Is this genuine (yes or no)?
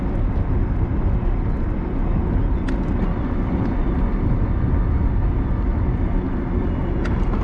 yes